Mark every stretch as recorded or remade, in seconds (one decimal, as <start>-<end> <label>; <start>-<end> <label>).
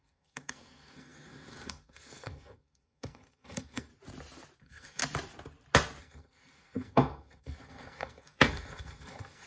0.0-3.9 remade; 3.9-4.6 recorded; 4.6-5.0 remade; 5.0-6.0 recorded; 6.0-9.5 remade